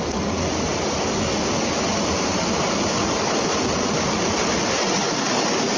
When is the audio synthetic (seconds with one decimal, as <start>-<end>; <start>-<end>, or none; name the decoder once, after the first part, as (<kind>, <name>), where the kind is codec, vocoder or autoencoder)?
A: none

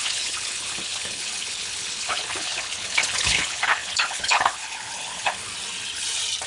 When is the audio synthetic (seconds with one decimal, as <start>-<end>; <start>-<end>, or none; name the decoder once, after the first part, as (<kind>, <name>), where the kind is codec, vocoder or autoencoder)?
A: 0.0-5.5 (codec, HILCodec)